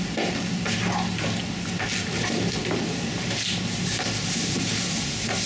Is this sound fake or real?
real